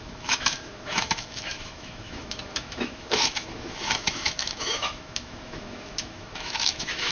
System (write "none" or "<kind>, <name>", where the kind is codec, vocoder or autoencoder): autoencoder, DAC-VAE